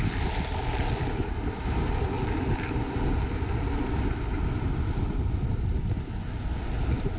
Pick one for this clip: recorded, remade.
recorded